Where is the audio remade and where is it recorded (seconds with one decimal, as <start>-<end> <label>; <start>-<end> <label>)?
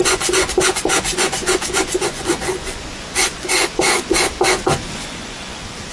0.0-5.9 remade